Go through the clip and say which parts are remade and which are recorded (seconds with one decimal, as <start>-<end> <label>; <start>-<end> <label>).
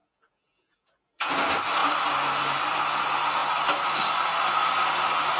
0.0-1.3 remade; 1.3-5.4 recorded